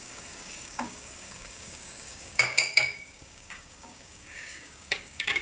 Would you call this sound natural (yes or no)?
no